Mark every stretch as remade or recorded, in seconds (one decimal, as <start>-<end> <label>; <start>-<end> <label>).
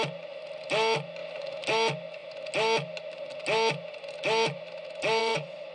0.0-5.2 recorded; 5.2-5.7 remade